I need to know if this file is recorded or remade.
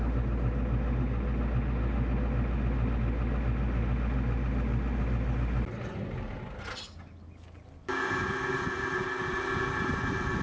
recorded